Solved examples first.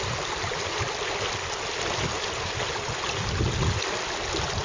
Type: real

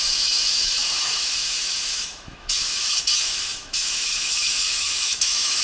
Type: fake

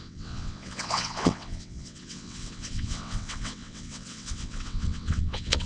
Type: fake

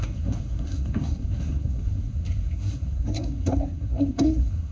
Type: fake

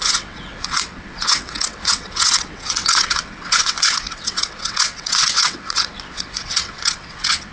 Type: fake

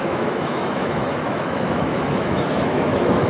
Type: fake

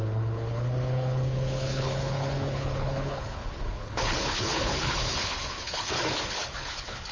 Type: fake